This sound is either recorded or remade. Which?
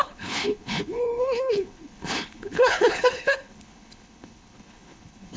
remade